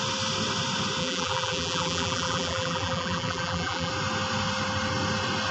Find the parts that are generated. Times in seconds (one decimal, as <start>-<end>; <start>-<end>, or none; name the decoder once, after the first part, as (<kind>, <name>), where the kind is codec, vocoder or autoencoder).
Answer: 1.0-3.9 (vocoder, BigVGAN v2)